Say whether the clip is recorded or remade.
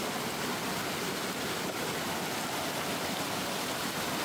recorded